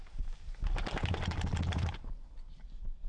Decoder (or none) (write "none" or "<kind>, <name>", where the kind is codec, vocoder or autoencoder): none